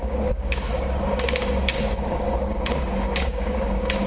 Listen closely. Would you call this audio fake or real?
fake